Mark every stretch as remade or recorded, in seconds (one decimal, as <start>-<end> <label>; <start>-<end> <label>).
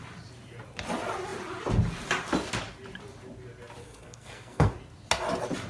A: 0.0-3.8 recorded; 3.8-4.7 remade; 4.7-5.7 recorded